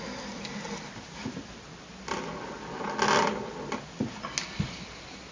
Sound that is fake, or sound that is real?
real